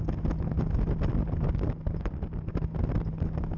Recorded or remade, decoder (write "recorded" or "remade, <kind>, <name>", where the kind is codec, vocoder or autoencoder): recorded